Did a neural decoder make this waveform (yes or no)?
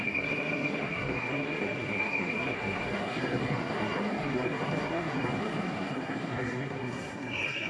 yes